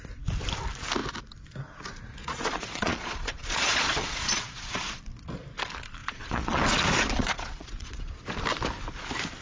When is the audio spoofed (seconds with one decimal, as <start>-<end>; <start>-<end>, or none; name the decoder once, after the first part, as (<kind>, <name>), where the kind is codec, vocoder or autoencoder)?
2.2-5.0 (vocoder, Vocos); 6.0-6.6; 7.2-8.2